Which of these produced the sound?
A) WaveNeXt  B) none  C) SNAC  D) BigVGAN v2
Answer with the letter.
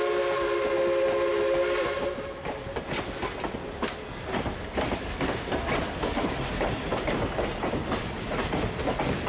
B